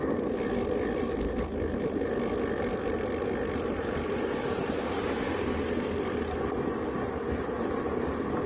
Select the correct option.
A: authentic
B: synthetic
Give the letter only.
A